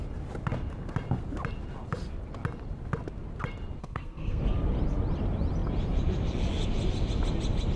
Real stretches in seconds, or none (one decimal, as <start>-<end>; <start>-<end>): 0.0-3.8; 4.4-7.8